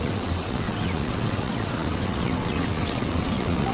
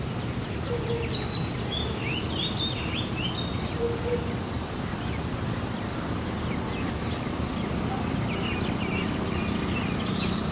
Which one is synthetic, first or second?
first